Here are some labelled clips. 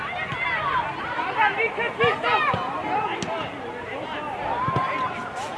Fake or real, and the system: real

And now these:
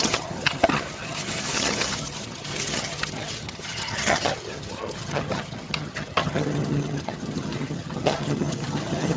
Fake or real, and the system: fake, vocoder, HiFi-GAN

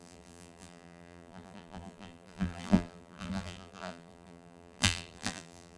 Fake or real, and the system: fake, vocoder, BigVGAN v2